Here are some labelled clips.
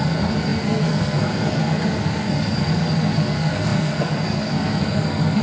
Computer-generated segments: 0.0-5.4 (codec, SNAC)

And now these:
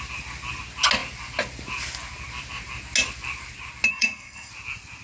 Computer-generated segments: 3.9-4.5 (codec, SNAC)

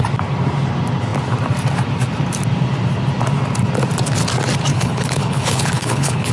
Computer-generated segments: 4.7-6.3 (codec, HILCodec)